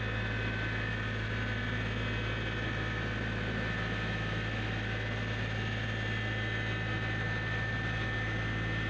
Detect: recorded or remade recorded